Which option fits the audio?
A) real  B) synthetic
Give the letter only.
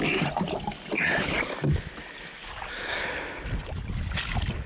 A